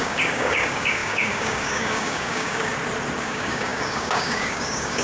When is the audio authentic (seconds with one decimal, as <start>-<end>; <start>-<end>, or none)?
2.7-3.2